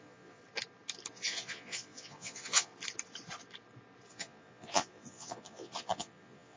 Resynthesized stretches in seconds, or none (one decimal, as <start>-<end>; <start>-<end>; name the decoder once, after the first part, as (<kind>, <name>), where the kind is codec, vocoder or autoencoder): 0.0-0.4 (vocoder, Vocos); 1.1-2.7; 4.1-6.6